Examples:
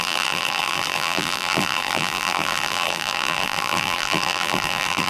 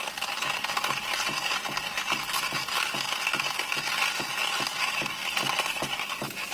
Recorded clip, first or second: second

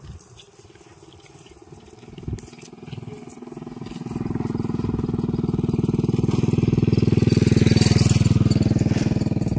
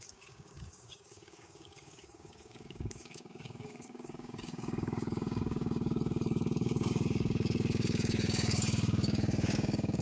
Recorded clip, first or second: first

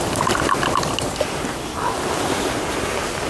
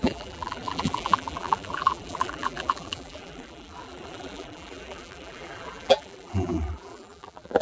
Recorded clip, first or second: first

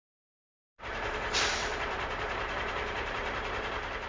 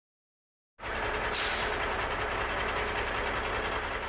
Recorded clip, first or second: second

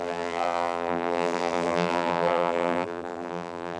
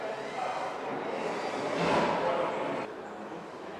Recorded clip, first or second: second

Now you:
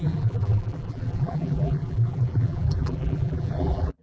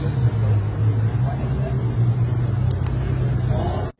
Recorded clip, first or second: second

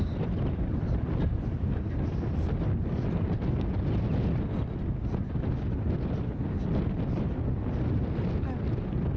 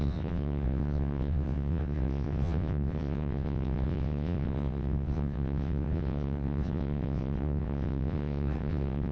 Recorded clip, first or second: first